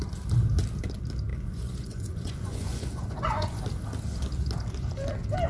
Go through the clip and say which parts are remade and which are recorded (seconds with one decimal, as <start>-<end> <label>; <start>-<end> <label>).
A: 0.0-1.3 recorded; 1.3-3.6 remade; 3.6-5.5 recorded

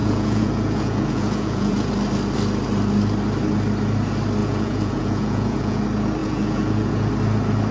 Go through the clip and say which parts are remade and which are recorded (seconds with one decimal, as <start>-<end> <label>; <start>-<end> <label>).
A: 0.0-1.9 remade; 1.9-4.4 recorded; 4.4-5.8 remade; 5.8-6.2 recorded; 6.2-7.1 remade; 7.1-7.7 recorded

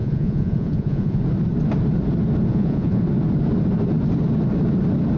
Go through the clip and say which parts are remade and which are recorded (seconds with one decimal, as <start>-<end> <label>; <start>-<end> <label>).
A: 0.0-1.2 remade; 1.2-2.5 recorded; 2.5-3.0 remade; 3.0-5.2 recorded

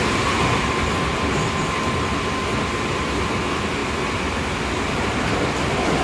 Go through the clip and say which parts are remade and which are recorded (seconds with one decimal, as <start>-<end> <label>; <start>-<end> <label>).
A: 0.0-6.0 recorded

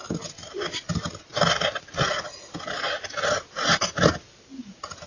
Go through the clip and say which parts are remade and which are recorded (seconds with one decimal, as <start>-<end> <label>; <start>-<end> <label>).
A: 0.0-5.1 recorded

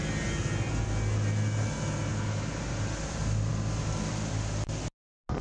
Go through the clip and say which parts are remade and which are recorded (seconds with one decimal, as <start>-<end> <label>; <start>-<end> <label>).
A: 0.0-5.4 recorded